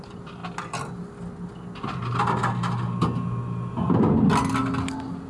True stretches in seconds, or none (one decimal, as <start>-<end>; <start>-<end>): 0.0-5.3